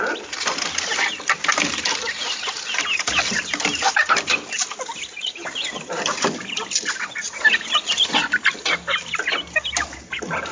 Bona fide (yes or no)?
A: yes